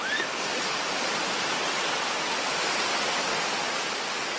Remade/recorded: recorded